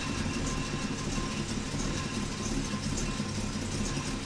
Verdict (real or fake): real